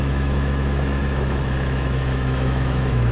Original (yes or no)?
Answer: no